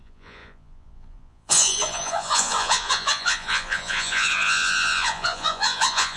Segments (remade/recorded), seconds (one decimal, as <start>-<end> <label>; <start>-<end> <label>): 0.0-6.2 remade